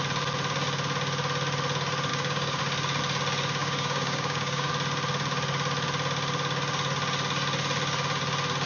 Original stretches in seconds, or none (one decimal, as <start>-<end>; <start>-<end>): 0.0-2.1; 2.6-3.6; 4.7-8.7